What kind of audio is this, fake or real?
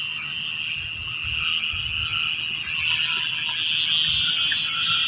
real